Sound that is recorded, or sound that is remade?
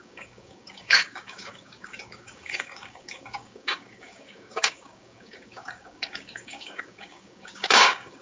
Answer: remade